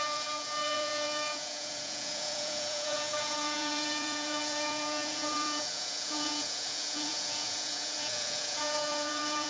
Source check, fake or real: fake